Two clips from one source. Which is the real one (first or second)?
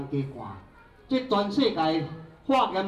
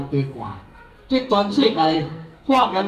first